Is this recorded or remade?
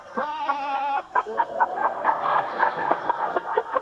remade